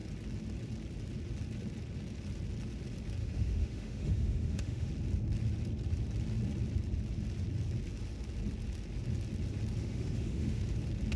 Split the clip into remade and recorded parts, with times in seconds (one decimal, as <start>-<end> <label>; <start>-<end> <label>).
0.0-3.2 recorded; 3.2-4.9 remade; 4.9-9.8 recorded; 9.8-10.6 remade; 10.6-11.2 recorded